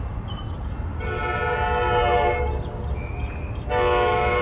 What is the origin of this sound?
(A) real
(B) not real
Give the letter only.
A